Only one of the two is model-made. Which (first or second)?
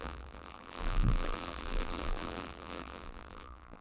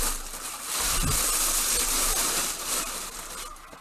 first